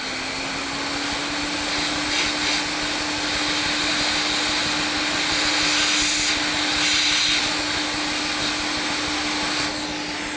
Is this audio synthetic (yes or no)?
no